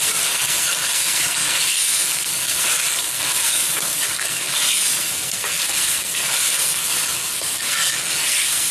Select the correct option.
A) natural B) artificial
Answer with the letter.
B